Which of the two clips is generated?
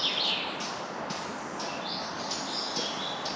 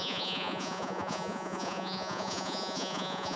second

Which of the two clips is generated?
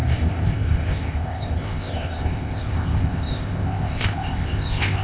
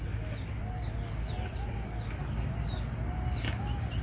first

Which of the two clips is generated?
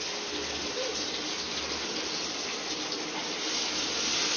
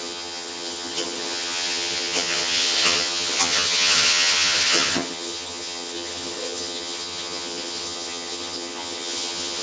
second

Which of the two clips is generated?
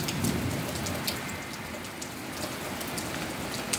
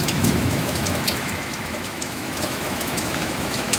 second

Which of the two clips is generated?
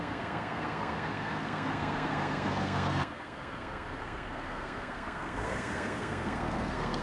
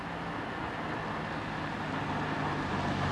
first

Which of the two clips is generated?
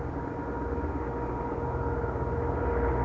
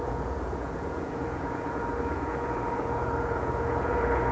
second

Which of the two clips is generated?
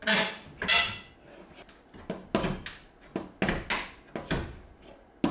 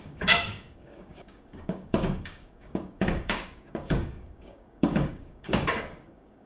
second